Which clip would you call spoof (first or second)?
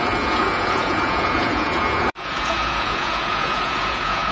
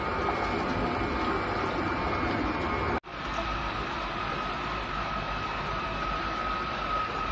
first